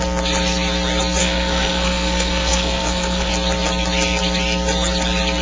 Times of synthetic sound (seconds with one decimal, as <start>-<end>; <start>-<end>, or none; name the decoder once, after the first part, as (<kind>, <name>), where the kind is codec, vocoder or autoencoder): 1.2-3.3 (codec, SNAC)